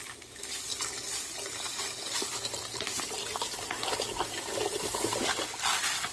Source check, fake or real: real